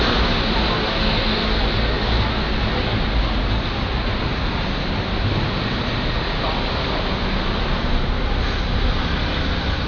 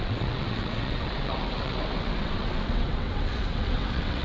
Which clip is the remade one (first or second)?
second